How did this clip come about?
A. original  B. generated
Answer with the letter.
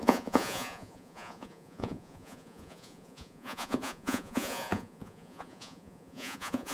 B